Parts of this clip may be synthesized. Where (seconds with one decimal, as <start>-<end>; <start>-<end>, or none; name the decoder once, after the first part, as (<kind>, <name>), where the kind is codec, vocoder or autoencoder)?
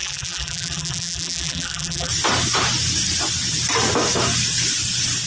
0.0-2.1 (vocoder, BigVGAN v2)